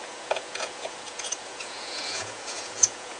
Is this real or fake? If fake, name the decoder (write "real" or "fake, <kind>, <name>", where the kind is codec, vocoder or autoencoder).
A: fake, vocoder, Vocos